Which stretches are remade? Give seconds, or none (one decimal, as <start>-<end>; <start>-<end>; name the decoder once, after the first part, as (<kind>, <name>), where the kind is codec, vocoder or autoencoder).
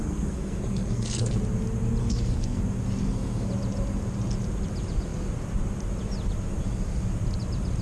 0.0-1.4 (codec, SNAC); 2.0-2.6; 3.0-3.5